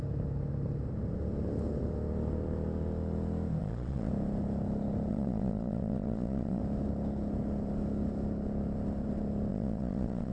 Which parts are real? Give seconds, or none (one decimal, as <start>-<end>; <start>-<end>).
0.0-3.6; 4.1-5.1; 6.6-9.5